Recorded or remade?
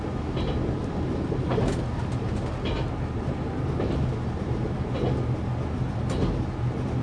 recorded